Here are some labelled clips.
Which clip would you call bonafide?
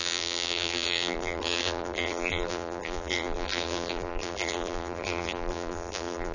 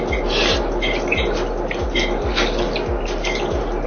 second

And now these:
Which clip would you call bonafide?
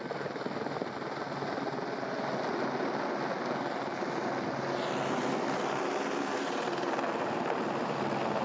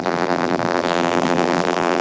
first